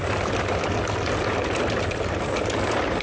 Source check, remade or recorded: recorded